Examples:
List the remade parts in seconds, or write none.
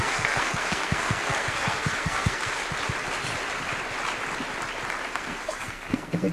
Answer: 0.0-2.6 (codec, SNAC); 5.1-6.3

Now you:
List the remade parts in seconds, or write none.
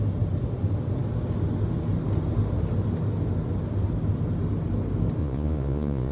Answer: 5.2-6.1 (vocoder, Vocos)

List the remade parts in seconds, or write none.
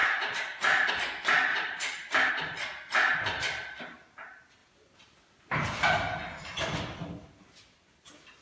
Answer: 0.0-0.9 (vocoder, BigVGAN v2); 1.5-2.3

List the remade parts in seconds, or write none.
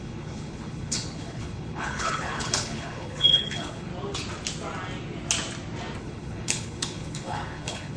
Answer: 0.0-3.9 (codec, HILCodec); 6.0-8.0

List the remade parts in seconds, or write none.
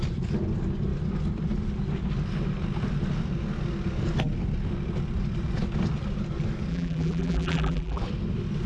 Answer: 6.7-8.0 (vocoder, BigVGAN v2)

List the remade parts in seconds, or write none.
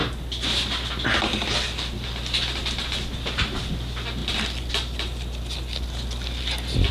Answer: none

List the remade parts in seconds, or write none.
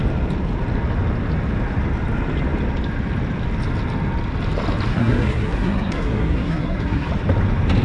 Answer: 4.9-7.1 (codec, SNAC)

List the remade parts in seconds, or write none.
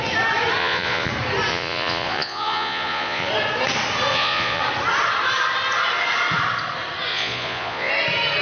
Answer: 0.6-1.1 (vocoder, Vocos); 1.5-3.3; 4.1-4.6; 7.1-7.9